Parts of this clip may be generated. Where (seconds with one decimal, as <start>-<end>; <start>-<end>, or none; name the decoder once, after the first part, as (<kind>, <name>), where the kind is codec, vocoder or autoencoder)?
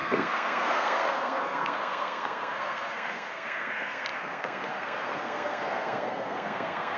0.0-7.0 (codec, SNAC)